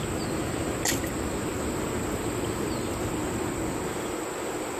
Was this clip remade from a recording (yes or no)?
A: no